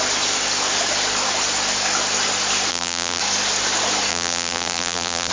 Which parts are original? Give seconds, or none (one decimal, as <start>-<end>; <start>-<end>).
0.0-2.7; 3.2-4.1